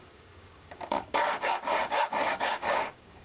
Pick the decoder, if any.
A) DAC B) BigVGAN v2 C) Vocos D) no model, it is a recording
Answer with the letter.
A